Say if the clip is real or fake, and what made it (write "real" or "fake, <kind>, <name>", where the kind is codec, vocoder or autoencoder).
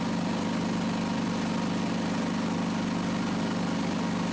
real